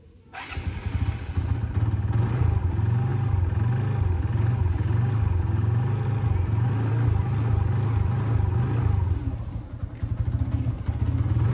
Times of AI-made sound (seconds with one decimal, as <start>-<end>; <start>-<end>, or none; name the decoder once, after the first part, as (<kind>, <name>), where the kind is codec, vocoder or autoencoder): none